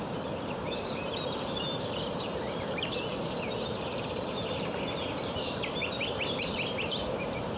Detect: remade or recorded remade